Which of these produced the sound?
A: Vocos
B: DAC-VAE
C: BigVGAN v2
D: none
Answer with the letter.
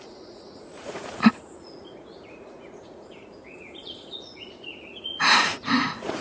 A